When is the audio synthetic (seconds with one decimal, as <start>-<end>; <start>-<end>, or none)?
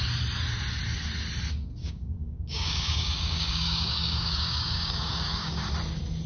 1.8-5.6